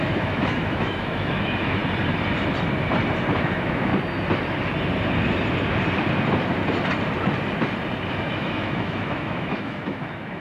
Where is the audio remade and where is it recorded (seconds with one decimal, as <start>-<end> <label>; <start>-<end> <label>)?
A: 0.0-1.8 remade; 1.8-3.4 recorded; 3.4-3.9 remade; 3.9-8.1 recorded; 8.1-10.4 remade